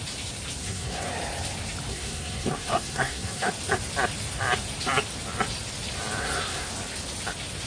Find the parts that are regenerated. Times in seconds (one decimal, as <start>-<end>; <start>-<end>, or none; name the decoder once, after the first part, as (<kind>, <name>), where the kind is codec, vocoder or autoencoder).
0.6-1.1 (codec, SNAC); 1.9-3.5; 6.2-6.7